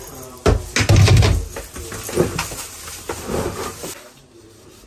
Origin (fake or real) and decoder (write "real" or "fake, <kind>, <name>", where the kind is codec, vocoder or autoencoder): real